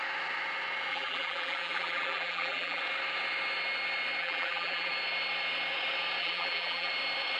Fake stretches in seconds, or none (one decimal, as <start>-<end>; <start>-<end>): 0.9-2.8; 4.2-4.9; 6.2-6.9